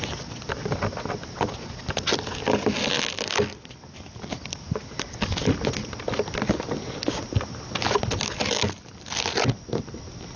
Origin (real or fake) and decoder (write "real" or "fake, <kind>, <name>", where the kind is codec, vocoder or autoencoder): real